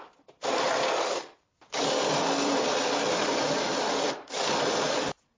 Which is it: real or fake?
real